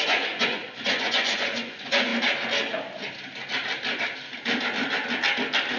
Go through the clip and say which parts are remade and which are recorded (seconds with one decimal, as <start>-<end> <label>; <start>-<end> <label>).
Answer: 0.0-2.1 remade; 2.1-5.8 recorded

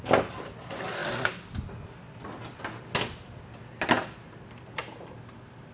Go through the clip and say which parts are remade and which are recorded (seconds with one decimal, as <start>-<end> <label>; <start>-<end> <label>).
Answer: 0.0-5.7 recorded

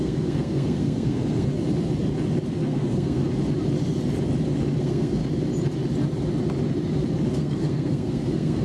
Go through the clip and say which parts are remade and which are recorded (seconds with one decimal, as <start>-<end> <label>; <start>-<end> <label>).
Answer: 0.0-1.5 remade; 1.5-2.5 recorded; 2.5-3.2 remade; 3.2-4.8 recorded; 4.8-5.2 remade; 5.2-7.3 recorded; 7.3-8.6 remade

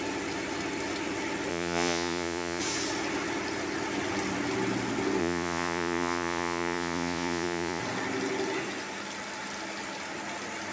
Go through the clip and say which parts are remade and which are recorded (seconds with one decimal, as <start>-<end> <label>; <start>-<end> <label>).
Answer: 0.0-1.5 recorded; 1.5-2.6 remade; 2.6-5.2 recorded; 5.2-7.8 remade; 7.8-10.7 recorded

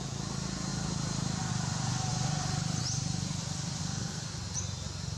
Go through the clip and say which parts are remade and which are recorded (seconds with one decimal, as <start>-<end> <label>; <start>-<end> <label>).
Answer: 0.0-3.8 recorded; 3.8-4.3 remade; 4.3-5.2 recorded